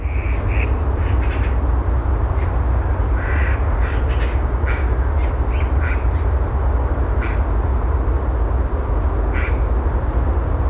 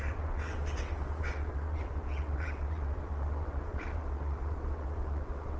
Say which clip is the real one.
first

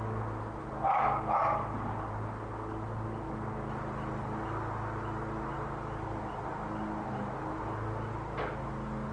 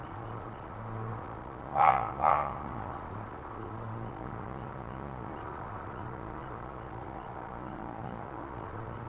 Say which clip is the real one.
first